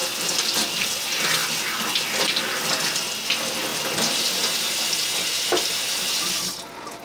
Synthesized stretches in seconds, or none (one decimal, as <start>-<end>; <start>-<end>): none